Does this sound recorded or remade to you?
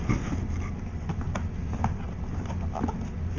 recorded